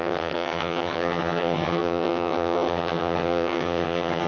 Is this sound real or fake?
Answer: fake